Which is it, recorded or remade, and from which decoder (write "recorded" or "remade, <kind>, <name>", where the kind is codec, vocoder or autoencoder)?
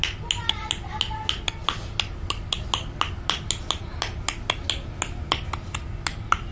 recorded